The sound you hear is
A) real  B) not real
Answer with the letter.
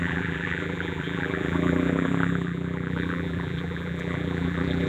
B